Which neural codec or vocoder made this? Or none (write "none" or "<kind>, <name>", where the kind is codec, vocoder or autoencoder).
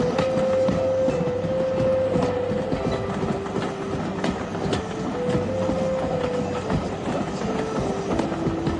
none